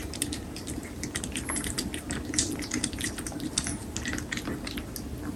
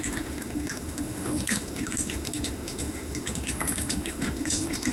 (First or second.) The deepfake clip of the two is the second